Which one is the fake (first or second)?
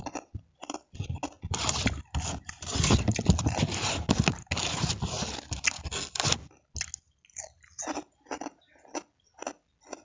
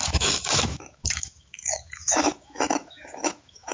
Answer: second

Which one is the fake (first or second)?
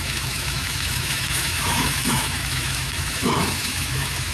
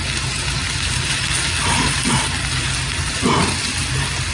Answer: first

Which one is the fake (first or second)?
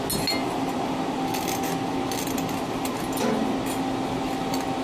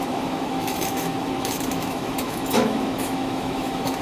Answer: second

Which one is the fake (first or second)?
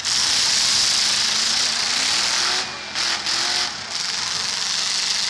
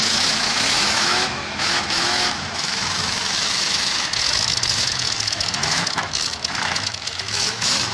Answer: second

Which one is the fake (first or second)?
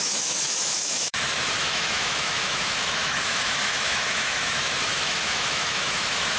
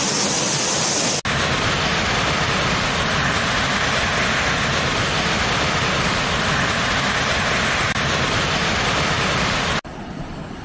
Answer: first